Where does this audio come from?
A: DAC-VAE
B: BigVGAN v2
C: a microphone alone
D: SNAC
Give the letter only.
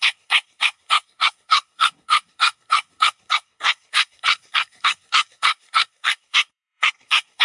D